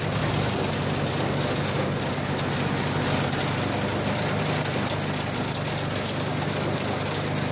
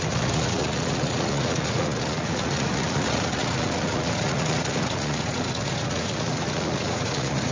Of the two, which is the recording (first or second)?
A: first